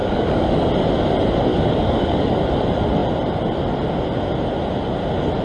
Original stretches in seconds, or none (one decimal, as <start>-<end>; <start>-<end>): 0.7-1.5; 2.4-5.4